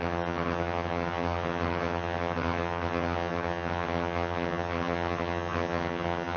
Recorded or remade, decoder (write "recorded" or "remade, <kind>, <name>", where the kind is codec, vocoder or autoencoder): remade, vocoder, HiFi-GAN